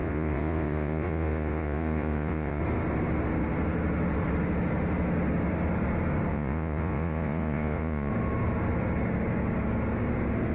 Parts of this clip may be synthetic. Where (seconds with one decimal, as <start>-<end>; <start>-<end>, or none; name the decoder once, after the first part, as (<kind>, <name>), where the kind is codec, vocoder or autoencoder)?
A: 0.0-2.6 (vocoder, Vocos); 6.3-8.1